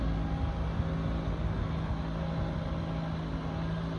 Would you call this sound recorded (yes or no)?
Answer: yes